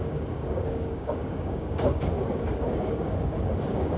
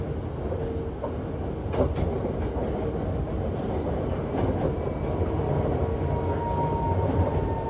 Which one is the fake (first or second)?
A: first